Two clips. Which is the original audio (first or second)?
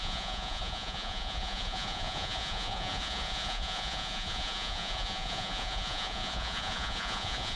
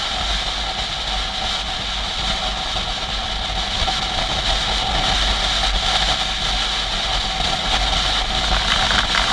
second